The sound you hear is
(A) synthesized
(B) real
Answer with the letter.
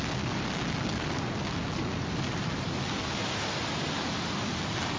B